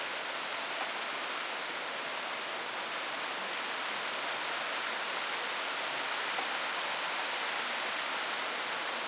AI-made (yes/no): yes